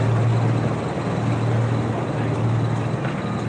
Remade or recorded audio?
recorded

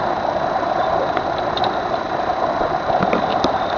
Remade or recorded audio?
recorded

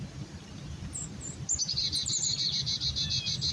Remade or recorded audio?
remade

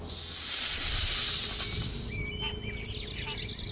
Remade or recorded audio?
recorded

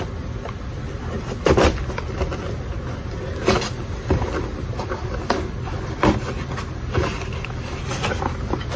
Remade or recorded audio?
recorded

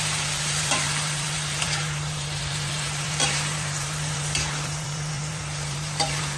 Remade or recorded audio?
remade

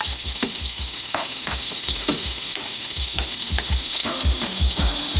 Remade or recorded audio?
remade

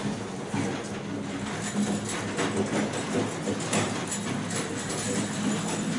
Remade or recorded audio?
recorded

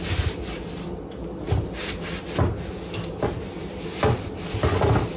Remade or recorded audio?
recorded